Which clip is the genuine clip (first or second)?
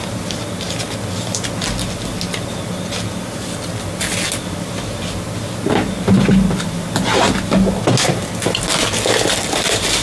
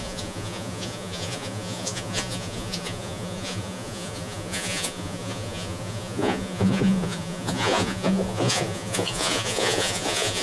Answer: first